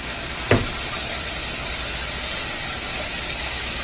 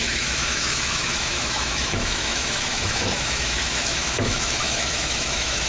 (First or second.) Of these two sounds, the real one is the first